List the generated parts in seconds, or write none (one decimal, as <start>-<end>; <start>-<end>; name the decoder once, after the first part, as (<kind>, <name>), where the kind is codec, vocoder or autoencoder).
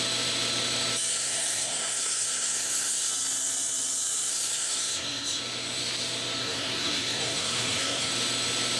1.1-3.1 (codec, SNAC); 4.3-5.4; 6.4-8.1